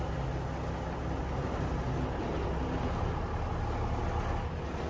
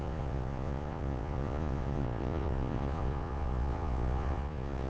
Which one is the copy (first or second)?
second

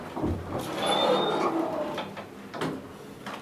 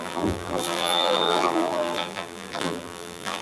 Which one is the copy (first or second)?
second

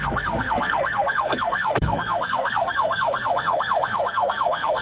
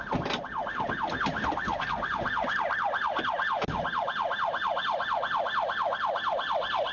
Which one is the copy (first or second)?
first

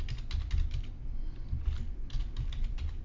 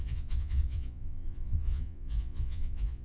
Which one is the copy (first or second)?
second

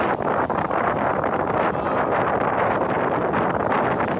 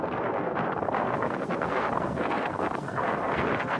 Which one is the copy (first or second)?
second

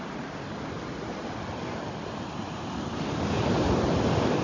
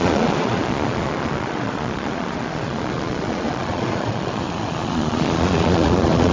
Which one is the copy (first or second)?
second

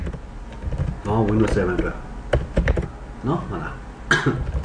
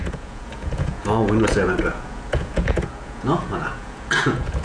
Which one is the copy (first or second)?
second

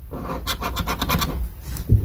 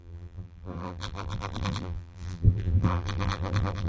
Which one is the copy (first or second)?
second